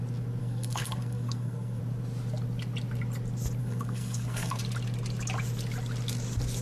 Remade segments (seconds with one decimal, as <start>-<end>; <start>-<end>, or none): 0.4-1.8; 3.6-4.6